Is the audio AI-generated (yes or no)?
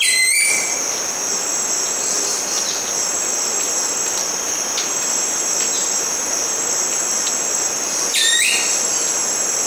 yes